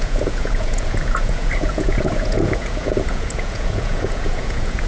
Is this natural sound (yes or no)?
no